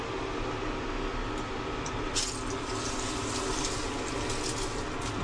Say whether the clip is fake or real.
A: real